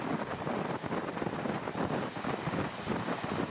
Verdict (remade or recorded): recorded